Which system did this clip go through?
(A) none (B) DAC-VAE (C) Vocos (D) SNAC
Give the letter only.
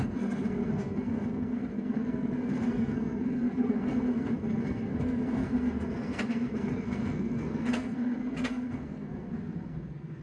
D